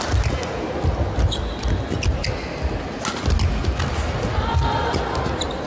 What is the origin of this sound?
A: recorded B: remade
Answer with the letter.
A